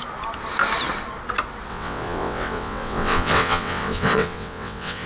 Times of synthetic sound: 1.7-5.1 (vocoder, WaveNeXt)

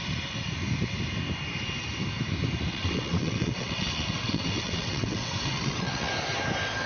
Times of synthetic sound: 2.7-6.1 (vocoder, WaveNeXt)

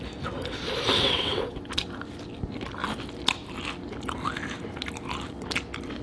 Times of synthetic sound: 0.9-1.7 (vocoder, WaveNeXt)

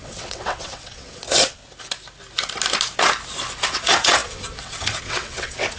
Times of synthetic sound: 0.0-1.6 (vocoder, WaveNeXt); 3.6-5.8

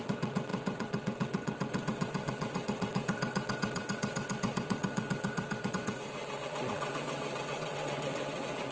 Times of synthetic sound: 0.0-8.7 (vocoder, WaveNeXt)